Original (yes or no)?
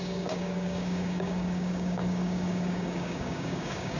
no